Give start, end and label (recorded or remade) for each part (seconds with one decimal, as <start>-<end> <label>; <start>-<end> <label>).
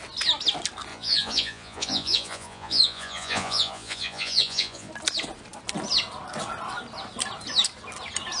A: 0.0-0.9 recorded; 0.9-4.9 remade; 4.9-8.4 recorded